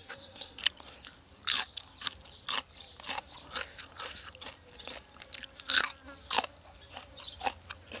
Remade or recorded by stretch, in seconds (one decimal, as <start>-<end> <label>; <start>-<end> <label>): 0.0-0.6 remade; 0.6-8.0 recorded